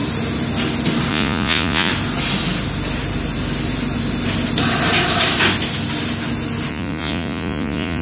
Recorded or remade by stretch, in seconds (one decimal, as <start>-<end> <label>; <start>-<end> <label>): 0.0-1.1 recorded; 1.1-1.9 remade; 1.9-6.7 recorded; 6.7-8.0 remade